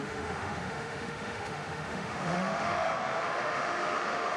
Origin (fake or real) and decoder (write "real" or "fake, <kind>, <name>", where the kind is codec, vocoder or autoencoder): fake, autoencoder, DAC-VAE